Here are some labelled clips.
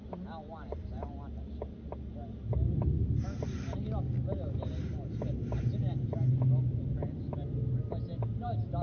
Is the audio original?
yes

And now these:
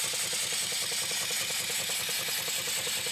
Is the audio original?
yes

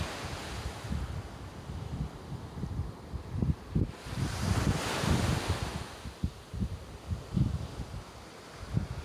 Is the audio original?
yes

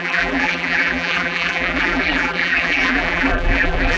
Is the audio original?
no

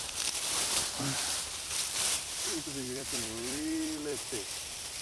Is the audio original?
no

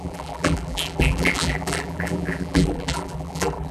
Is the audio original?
no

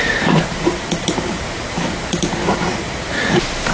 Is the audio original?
no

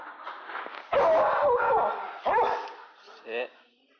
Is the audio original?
yes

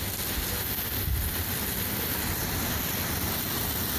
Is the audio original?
yes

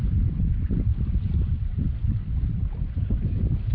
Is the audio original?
yes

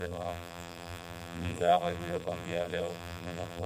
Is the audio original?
no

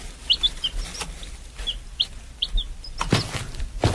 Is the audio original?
yes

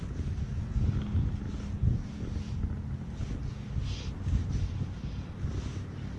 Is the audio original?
yes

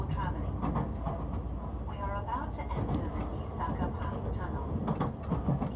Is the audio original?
yes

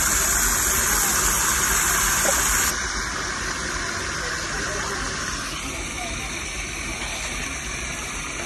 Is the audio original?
yes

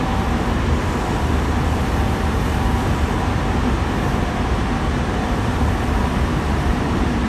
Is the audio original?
no